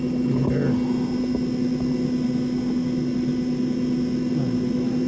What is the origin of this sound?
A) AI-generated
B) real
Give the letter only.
B